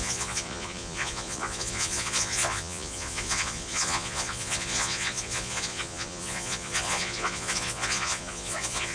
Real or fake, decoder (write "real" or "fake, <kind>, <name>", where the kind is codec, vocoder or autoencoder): fake, vocoder, Vocos